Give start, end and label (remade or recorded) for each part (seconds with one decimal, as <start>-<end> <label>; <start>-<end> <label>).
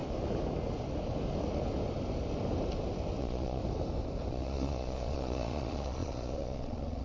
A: 0.0-3.2 recorded; 3.2-3.6 remade; 3.6-4.3 recorded; 4.3-7.0 remade